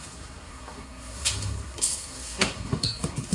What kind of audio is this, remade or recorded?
remade